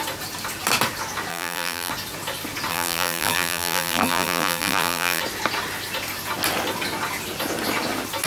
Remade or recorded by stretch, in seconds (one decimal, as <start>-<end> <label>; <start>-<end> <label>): 0.0-1.3 recorded; 1.3-1.9 remade; 1.9-2.7 recorded; 2.7-5.2 remade; 5.2-8.3 recorded